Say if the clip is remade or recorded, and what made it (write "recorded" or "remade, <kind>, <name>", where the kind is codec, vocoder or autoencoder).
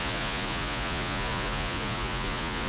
remade, vocoder, Vocos